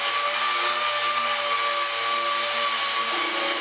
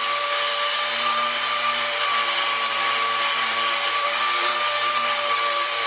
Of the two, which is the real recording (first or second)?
first